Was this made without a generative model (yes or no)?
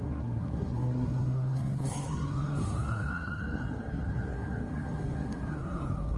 no